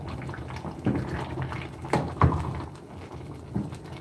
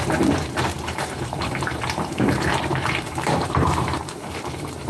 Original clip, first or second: first